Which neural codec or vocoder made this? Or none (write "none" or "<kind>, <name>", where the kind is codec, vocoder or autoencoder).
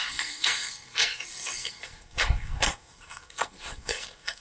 codec, SNAC